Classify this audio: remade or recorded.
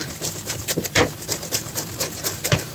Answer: remade